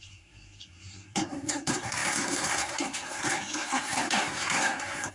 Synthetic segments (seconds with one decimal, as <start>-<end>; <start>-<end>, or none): 0.0-5.1